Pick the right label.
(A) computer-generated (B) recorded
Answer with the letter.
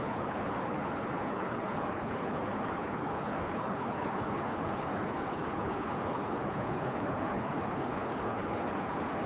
A